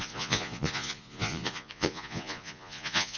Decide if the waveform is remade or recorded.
remade